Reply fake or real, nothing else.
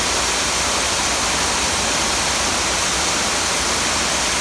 real